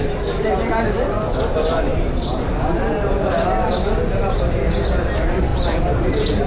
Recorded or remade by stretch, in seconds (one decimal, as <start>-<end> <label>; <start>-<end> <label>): 0.0-6.5 recorded